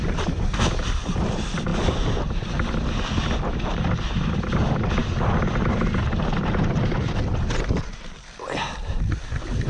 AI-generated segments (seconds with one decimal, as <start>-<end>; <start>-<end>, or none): 0.0-1.7; 3.7-9.7